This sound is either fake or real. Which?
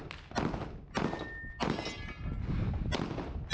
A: real